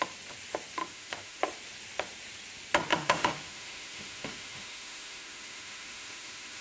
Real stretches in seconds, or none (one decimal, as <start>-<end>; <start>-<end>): 0.0-0.8; 1.4-2.9